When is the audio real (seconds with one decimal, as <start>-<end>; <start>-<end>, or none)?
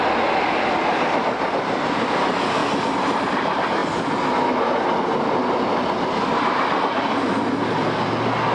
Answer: 0.0-8.5